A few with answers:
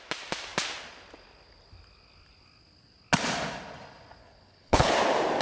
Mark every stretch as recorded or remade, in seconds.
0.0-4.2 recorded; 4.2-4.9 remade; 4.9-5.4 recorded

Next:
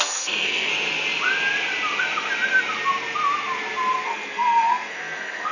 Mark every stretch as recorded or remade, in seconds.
0.0-0.7 remade; 0.7-4.0 recorded; 4.0-5.5 remade